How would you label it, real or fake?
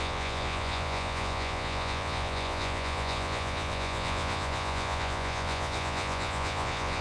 fake